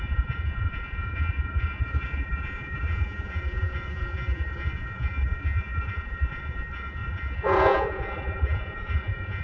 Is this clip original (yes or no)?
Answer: no